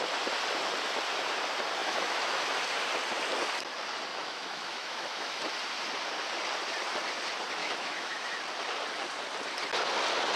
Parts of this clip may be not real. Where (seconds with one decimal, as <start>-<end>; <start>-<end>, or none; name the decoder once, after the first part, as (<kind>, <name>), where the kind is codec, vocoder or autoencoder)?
1.8-2.5 (autoencoder, DAC-VAE); 4.1-5.4; 7.6-8.4